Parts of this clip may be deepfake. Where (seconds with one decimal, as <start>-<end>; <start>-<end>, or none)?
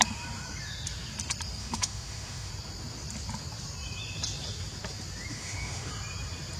1.6-2.5; 5.3-5.9